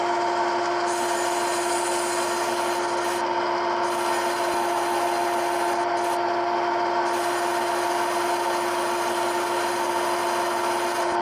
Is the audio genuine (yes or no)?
yes